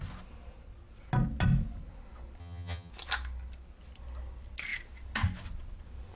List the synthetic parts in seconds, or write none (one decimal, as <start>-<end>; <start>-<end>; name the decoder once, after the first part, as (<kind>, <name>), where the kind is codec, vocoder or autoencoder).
2.4-2.9 (vocoder, HiFi-GAN)